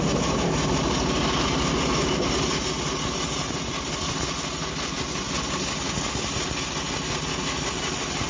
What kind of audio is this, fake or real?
real